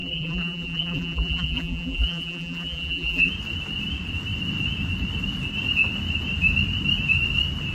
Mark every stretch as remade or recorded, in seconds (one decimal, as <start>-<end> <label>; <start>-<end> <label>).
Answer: 0.0-3.3 remade; 3.3-7.7 recorded